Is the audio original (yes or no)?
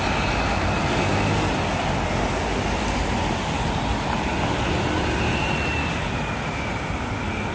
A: yes